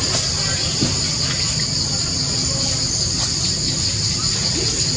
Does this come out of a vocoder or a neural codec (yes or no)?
no